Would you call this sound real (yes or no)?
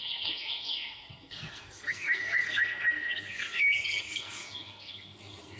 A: no